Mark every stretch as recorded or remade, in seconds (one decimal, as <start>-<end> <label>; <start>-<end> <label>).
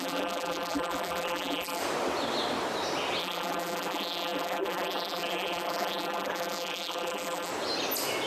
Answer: 0.0-1.8 remade; 1.8-3.2 recorded; 3.2-7.5 remade; 7.5-8.3 recorded